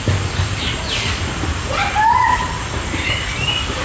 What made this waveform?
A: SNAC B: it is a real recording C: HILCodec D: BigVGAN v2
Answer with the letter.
B